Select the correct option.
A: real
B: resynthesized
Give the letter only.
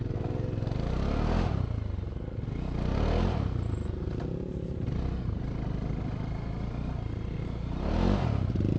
A